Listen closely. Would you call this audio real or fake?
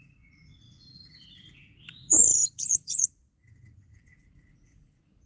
fake